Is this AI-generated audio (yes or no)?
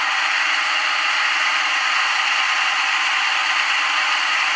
no